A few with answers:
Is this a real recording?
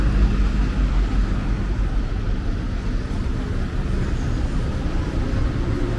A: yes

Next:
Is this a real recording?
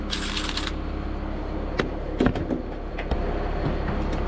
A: yes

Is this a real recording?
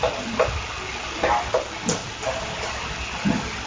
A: yes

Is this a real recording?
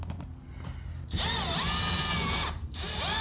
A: yes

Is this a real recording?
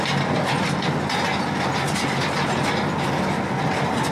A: yes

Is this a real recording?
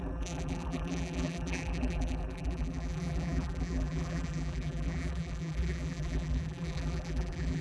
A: no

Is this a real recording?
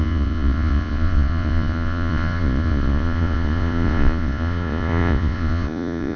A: no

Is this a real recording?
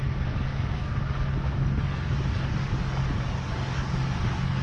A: no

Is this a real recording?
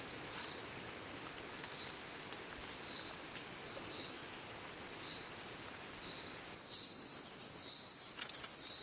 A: yes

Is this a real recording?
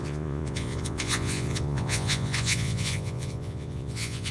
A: no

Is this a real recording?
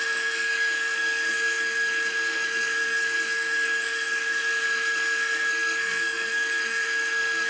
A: no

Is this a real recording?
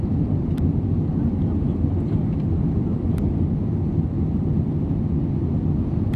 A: yes